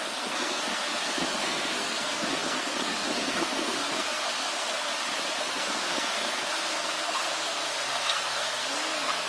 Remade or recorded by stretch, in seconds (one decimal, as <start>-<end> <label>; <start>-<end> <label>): 0.0-4.9 remade; 4.9-5.4 recorded; 5.4-9.3 remade